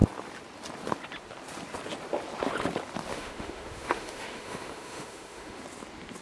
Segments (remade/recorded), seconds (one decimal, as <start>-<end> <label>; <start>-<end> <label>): 0.0-3.1 recorded; 3.1-5.6 remade; 5.6-6.2 recorded